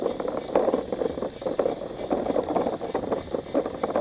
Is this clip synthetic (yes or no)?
no